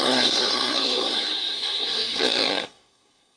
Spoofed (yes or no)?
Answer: yes